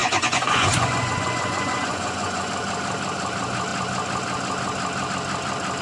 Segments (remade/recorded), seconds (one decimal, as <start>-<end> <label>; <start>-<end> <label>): 0.0-2.5 remade; 2.5-5.8 recorded